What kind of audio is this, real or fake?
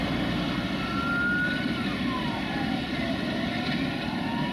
real